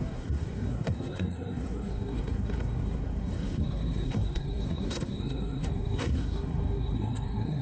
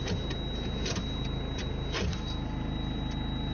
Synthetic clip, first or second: first